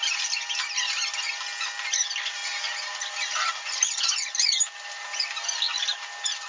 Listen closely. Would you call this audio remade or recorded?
recorded